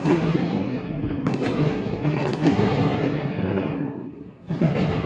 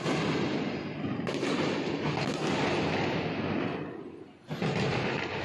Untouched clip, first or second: second